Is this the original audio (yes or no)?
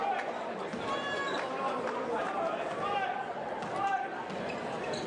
no